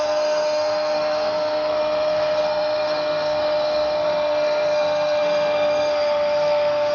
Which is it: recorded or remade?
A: remade